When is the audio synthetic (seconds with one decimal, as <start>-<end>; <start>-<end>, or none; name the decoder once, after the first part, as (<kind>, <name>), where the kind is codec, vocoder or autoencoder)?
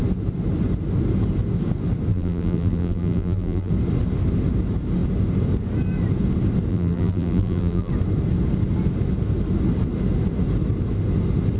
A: 2.1-3.7 (vocoder, BigVGAN v2); 6.7-7.9